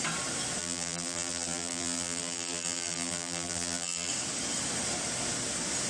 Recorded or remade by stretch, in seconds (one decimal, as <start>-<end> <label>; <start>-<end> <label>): 0.0-0.6 recorded; 0.6-4.1 remade; 4.1-5.9 recorded